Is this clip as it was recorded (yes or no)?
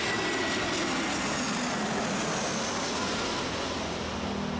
yes